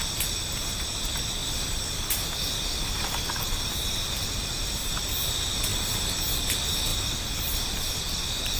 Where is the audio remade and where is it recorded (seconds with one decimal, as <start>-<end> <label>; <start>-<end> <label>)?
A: 0.0-1.4 recorded; 1.4-4.9 remade; 4.9-5.7 recorded; 5.7-6.3 remade; 6.3-6.9 recorded; 6.9-8.6 remade